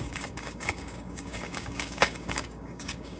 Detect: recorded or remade remade